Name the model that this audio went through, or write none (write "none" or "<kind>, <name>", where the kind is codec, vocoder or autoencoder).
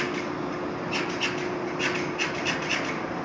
none